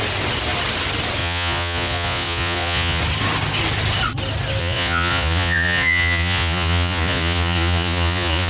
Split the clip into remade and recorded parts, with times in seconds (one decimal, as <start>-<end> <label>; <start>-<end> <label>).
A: 0.0-1.2 recorded; 1.2-3.0 remade; 3.0-4.6 recorded; 4.6-8.5 remade